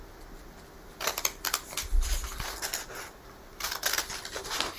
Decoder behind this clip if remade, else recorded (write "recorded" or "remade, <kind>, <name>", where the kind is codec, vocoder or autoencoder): recorded